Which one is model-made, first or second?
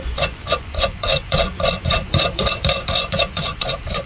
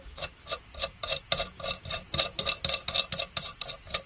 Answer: first